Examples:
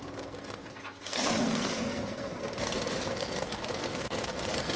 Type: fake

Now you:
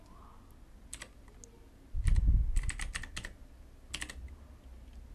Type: real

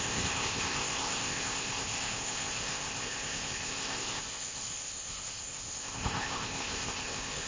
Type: fake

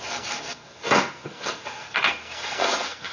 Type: fake